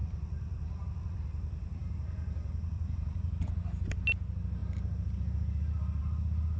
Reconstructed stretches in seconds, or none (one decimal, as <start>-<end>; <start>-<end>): 1.8-3.4; 4.6-6.0